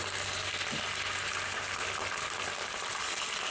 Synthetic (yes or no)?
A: no